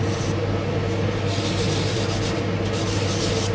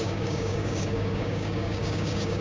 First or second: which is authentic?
first